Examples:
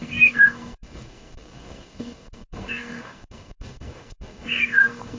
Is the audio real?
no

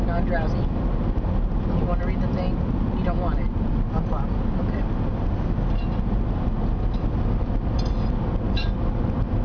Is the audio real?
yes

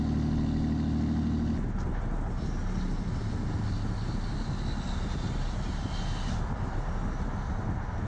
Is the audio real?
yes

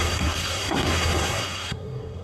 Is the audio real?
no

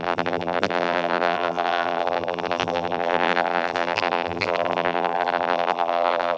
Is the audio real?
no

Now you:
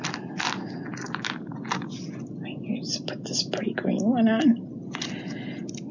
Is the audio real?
yes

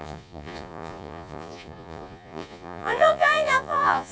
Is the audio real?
no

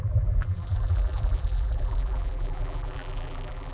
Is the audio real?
no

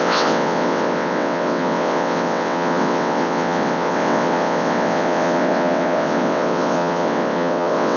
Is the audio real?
no